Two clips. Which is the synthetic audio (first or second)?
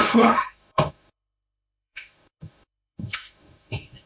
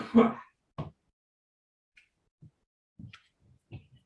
first